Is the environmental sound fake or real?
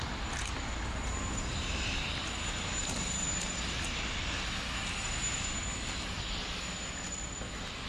real